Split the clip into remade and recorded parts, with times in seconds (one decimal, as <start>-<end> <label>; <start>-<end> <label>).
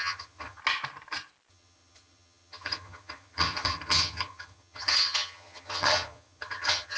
0.0-0.6 remade; 0.6-1.5 recorded; 1.5-7.0 remade